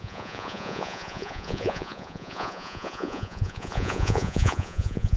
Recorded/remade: remade